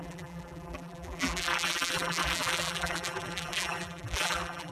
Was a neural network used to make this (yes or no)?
yes